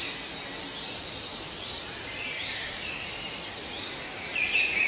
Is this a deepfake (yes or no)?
yes